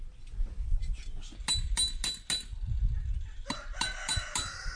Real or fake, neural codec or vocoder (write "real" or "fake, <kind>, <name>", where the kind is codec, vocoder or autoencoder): real